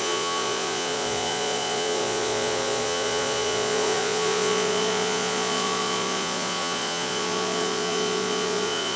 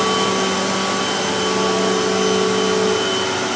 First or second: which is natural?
second